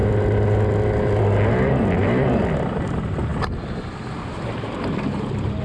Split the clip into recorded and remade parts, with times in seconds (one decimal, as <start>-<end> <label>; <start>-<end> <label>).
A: 0.0-5.6 recorded